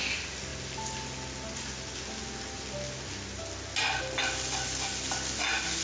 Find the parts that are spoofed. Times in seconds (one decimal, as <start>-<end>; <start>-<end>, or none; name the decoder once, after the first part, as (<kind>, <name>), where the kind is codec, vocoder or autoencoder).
none